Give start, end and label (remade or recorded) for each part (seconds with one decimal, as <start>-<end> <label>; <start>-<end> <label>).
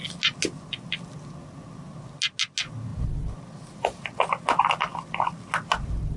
0.0-6.2 recorded